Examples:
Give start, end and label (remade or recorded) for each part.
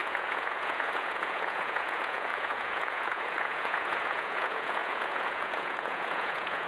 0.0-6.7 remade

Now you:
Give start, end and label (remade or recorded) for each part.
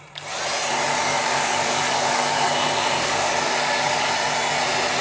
0.0-1.1 recorded; 1.1-4.1 remade; 4.1-5.0 recorded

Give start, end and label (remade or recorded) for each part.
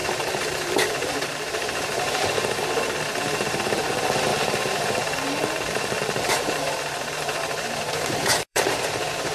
0.0-9.3 remade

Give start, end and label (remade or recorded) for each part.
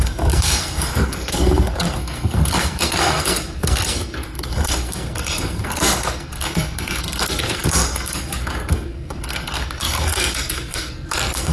0.0-11.5 remade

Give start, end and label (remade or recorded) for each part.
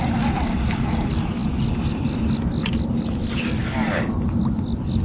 0.0-5.0 recorded